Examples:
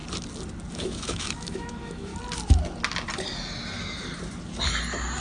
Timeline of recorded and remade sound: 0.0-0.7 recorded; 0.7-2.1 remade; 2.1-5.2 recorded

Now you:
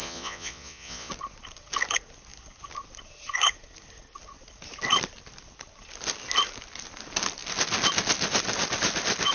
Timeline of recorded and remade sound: 0.0-1.1 remade; 1.1-9.3 recorded

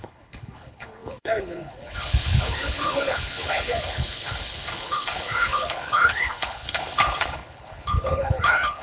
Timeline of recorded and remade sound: 0.0-8.8 remade

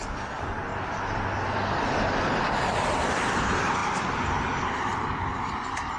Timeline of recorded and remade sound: 0.0-3.8 recorded; 3.8-6.0 remade